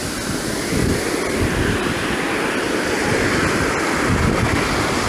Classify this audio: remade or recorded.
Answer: recorded